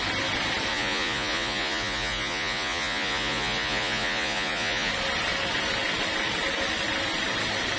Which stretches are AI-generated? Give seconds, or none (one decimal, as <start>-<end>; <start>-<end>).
0.7-4.9